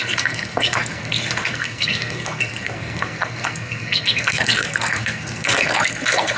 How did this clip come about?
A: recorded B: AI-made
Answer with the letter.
B